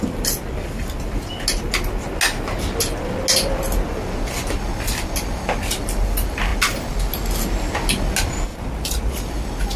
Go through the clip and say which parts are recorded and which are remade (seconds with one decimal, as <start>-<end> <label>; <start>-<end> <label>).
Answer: 0.0-8.5 recorded; 8.5-9.1 remade; 9.1-9.8 recorded